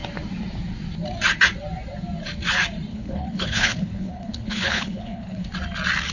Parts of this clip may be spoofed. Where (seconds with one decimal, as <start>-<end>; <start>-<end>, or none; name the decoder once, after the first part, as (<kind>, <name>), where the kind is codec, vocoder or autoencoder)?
2.9-5.5 (codec, HILCodec)

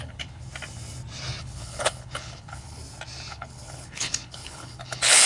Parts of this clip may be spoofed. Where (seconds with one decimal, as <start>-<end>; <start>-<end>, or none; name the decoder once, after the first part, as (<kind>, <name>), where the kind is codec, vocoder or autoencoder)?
0.0-0.5 (codec, HILCodec); 1.4-2.8; 3.3-5.3

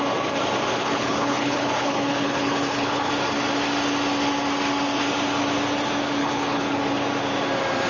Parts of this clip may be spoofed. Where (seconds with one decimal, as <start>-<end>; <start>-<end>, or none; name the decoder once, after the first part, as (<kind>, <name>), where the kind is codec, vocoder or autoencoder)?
0.7-3.1 (codec, HILCodec); 6.2-6.8

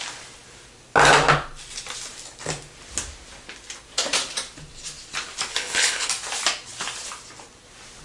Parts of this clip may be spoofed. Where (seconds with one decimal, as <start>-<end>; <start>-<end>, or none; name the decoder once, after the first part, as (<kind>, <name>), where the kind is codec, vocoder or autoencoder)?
5.5-6.1 (codec, HILCodec)

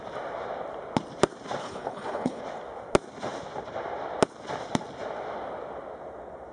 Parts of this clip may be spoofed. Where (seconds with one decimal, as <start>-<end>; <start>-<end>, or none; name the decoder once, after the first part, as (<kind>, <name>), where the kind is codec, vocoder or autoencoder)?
1.6-2.4 (codec, HILCodec)

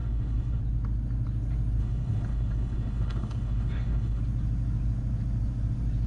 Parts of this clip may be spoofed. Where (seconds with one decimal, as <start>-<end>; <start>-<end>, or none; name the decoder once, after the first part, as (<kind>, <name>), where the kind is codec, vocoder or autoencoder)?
0.0-0.6 (codec, HILCodec); 1.8-4.2